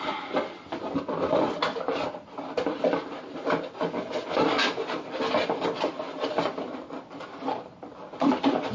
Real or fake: real